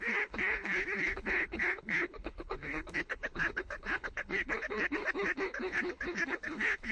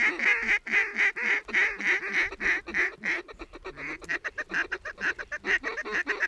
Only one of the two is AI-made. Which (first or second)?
first